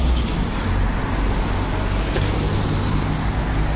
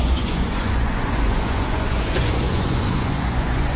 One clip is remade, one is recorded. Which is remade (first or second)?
second